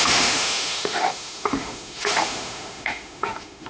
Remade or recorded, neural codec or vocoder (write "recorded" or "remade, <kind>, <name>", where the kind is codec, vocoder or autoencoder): remade, autoencoder, DAC-VAE